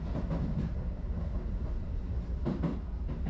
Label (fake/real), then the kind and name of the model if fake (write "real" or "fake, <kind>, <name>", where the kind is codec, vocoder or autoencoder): real